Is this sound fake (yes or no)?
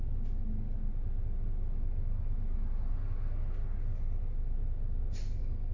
no